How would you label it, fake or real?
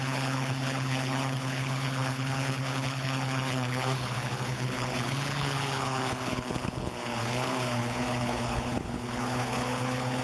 fake